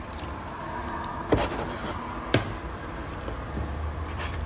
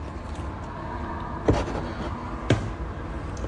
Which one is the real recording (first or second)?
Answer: second